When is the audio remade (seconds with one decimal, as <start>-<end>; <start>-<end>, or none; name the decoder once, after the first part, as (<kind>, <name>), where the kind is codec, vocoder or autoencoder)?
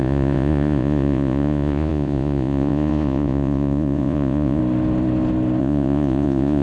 0.0-4.6 (vocoder, Vocos); 5.6-6.6